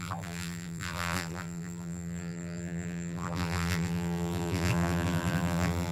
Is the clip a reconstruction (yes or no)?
yes